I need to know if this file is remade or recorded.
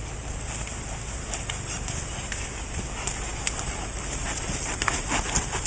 recorded